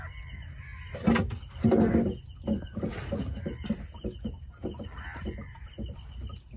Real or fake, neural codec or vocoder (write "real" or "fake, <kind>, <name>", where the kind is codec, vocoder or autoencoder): real